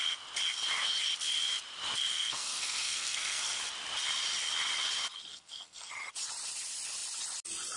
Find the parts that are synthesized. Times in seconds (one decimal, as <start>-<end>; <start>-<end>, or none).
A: 2.1-3.6; 5.3-5.9